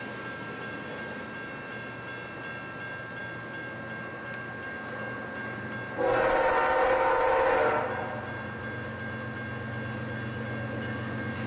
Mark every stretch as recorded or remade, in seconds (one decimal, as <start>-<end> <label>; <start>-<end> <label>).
0.0-11.5 recorded